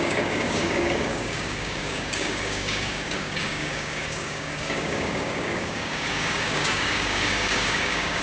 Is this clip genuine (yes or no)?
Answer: no